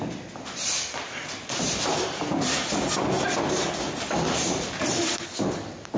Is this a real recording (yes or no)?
yes